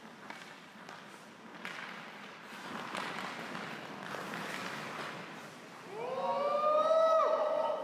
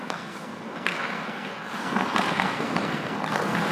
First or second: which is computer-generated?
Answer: second